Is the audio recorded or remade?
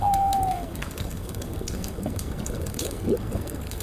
remade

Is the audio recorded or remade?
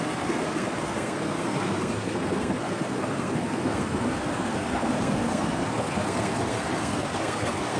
remade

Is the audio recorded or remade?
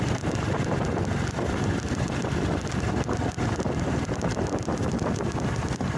recorded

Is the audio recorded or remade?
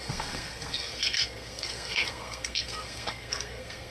remade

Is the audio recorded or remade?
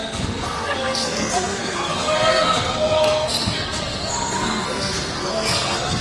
remade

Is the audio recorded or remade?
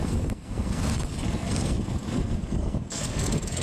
remade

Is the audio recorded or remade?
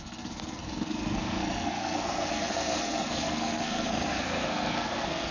remade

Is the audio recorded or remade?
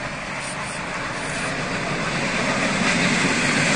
recorded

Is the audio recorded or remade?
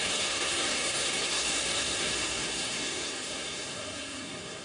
remade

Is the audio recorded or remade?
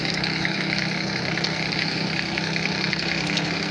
remade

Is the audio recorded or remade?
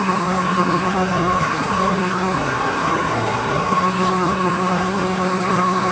remade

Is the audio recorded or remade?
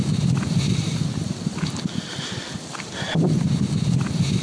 recorded